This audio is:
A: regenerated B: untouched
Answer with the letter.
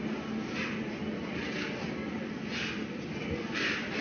B